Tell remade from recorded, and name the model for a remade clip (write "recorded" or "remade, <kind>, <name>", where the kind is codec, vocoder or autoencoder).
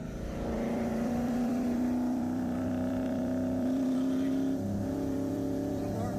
remade, vocoder, BigVGAN v2